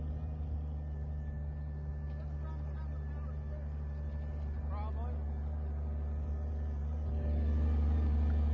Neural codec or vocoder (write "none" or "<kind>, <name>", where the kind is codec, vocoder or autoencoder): none